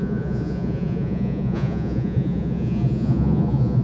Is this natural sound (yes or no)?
no